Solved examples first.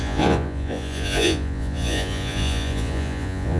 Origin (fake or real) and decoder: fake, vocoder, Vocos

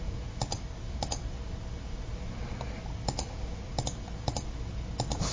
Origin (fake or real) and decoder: real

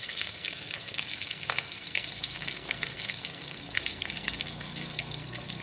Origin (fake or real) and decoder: fake, codec, SNAC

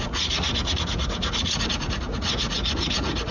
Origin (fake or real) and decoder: fake, vocoder, Vocos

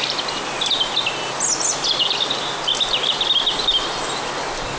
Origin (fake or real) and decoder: real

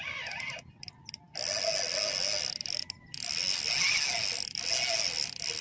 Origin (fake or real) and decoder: real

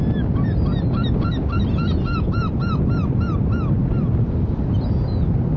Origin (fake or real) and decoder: real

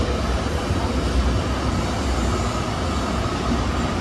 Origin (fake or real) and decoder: real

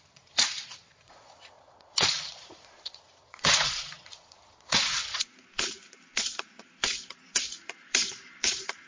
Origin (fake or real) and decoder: fake, vocoder, Vocos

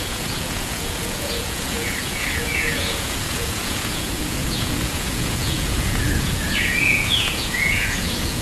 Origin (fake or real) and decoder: fake, vocoder, Vocos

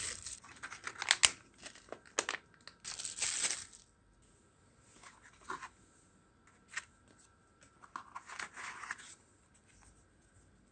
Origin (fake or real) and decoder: real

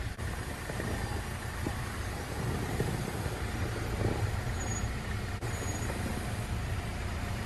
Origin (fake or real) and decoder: fake, vocoder, BigVGAN v2